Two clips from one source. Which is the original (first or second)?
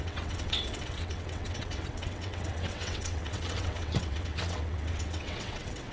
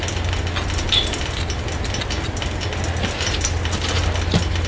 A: second